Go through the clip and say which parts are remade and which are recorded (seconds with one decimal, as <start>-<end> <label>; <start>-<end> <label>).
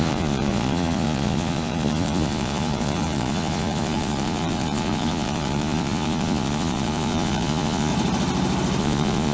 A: 0.0-7.9 remade; 7.9-8.8 recorded; 8.8-9.3 remade